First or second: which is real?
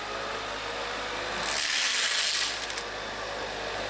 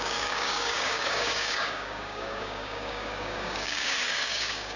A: first